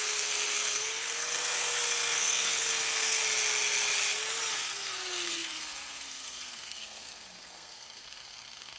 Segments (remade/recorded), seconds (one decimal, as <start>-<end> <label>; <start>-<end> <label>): 0.0-3.2 remade; 3.2-4.5 recorded; 4.5-8.8 remade